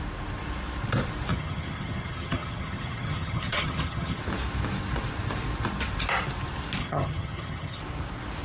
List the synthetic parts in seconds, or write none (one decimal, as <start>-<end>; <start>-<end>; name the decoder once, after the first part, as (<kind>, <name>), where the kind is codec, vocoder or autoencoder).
1.3-4.2 (vocoder, HiFi-GAN); 6.8-7.8